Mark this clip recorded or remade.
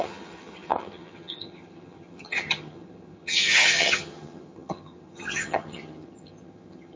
remade